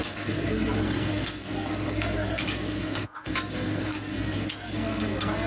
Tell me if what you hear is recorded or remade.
remade